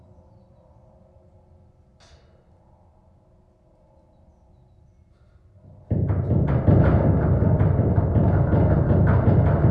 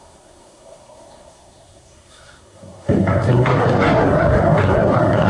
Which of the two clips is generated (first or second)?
second